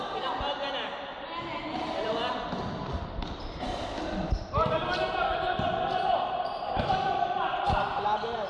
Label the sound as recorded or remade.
recorded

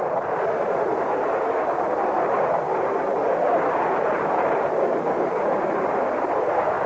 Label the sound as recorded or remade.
remade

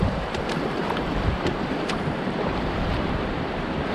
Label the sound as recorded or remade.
remade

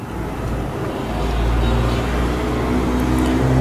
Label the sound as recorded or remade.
recorded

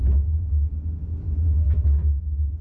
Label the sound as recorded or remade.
recorded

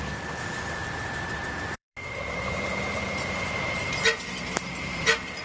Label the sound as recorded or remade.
remade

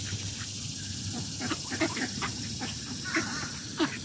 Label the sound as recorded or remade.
remade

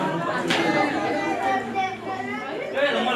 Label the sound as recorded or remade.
recorded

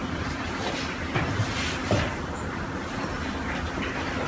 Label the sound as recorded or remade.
remade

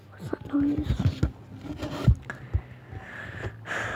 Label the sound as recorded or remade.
recorded